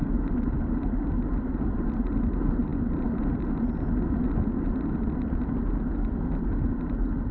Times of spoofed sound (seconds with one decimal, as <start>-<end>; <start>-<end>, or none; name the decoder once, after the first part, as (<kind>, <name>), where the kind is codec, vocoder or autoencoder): none